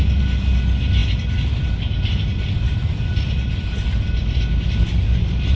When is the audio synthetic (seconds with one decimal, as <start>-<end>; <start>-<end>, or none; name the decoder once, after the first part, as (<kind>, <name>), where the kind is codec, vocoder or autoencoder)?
none